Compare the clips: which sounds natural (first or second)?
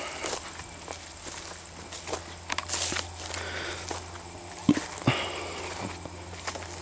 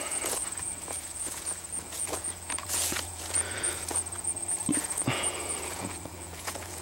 first